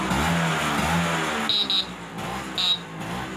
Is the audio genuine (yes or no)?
yes